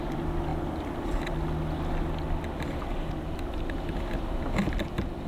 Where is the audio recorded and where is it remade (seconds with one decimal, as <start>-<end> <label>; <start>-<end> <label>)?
0.0-5.3 recorded